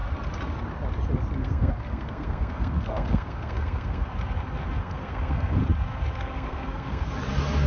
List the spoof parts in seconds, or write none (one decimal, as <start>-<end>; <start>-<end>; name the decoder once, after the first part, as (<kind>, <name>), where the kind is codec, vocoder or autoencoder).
1.4-4.1 (codec, SNAC); 4.8-5.6; 6.2-7.1